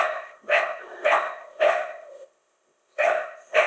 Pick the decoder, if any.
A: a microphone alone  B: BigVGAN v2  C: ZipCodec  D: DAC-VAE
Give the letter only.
C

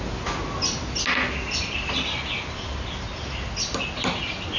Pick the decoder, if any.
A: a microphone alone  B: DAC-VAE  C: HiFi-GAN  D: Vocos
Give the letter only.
A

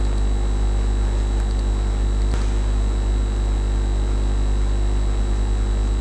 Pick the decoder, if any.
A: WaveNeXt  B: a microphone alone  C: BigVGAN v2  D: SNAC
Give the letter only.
B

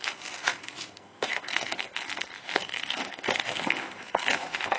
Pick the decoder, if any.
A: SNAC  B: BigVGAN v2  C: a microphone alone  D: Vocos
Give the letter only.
A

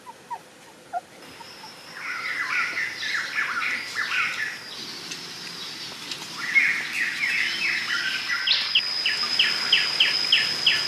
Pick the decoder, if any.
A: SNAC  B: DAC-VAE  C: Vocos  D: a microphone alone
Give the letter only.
D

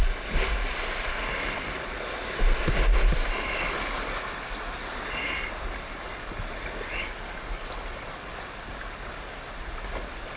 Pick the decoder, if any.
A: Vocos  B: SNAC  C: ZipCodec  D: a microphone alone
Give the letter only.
D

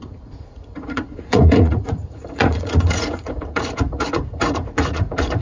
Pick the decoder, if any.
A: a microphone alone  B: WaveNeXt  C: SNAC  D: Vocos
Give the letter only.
D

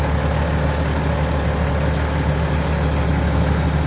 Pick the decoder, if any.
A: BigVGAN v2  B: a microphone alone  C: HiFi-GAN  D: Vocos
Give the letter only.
B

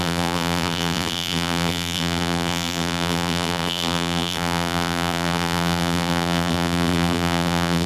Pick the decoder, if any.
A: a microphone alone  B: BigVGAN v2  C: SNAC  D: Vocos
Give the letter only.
B